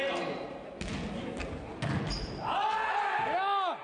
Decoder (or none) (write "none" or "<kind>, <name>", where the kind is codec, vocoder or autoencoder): none